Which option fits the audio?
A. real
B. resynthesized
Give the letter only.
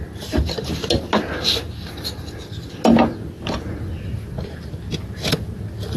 A